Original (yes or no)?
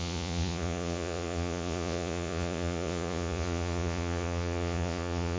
no